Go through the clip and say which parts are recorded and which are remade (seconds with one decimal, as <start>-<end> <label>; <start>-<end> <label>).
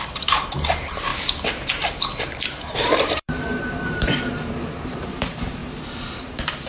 0.0-1.1 remade; 1.1-1.9 recorded; 1.9-5.6 remade; 5.6-6.2 recorded; 6.2-6.7 remade